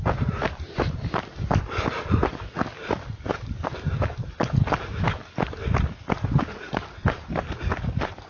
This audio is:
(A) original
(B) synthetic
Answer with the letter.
A